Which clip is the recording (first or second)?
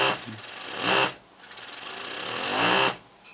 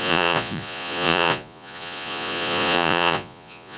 first